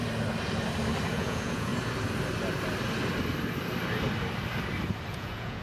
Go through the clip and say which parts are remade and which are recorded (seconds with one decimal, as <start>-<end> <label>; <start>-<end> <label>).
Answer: 0.0-1.1 recorded; 1.1-1.7 remade; 1.7-5.1 recorded; 5.1-5.6 remade